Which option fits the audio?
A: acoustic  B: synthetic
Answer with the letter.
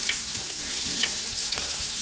B